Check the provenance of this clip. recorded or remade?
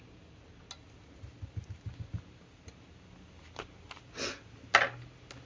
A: recorded